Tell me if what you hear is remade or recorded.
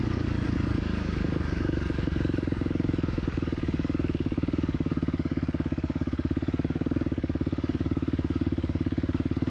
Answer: remade